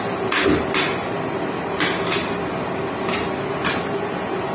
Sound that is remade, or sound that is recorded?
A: recorded